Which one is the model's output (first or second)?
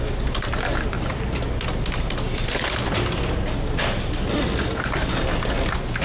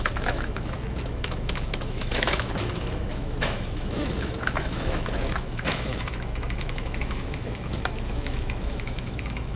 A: second